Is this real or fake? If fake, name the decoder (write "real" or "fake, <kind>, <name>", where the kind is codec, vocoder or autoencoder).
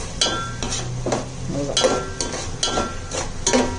real